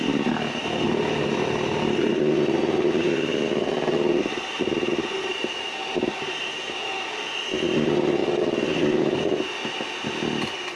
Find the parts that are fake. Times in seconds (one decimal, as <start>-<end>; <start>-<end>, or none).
none